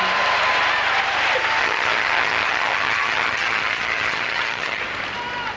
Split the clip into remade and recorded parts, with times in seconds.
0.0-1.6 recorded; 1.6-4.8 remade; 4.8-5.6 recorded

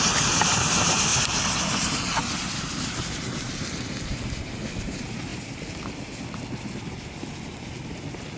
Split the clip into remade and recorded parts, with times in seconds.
0.0-8.4 recorded

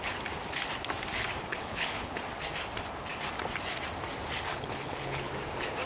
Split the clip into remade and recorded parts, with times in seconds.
0.0-1.5 recorded; 1.5-2.2 remade; 2.2-4.5 recorded; 4.5-5.3 remade; 5.3-5.9 recorded

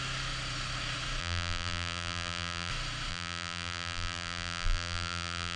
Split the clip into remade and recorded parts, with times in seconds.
0.0-1.2 recorded; 1.2-2.7 remade; 2.7-3.1 recorded; 3.1-5.6 remade

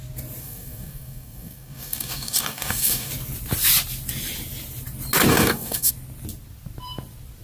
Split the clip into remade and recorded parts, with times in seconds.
0.0-0.4 recorded; 0.4-3.1 remade; 3.1-5.3 recorded; 5.3-5.9 remade; 5.9-7.4 recorded